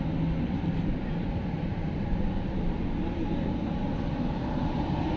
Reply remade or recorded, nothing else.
recorded